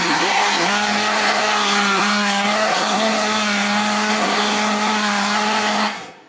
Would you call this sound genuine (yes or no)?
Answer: no